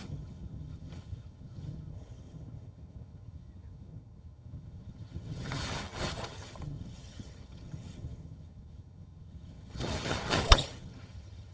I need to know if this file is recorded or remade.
remade